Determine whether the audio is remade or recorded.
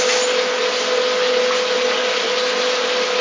recorded